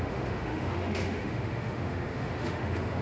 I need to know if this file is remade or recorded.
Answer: remade